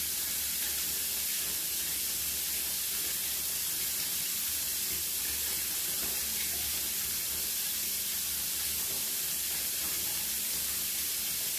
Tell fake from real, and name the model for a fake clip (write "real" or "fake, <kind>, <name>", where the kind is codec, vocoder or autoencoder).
real